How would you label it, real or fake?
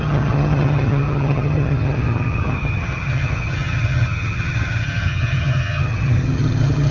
fake